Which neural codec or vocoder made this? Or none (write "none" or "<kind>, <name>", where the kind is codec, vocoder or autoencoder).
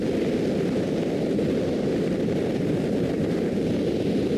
none